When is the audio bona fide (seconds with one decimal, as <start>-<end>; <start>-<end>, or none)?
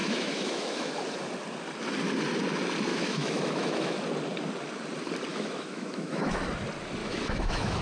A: 0.9-2.9; 4.0-5.3; 6.4-7.0